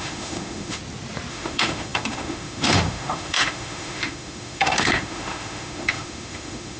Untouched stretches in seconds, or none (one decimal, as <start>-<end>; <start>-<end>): 0.8-1.3